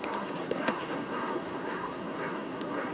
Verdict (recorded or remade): remade